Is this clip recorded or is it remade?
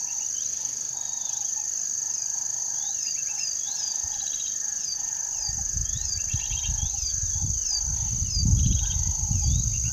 recorded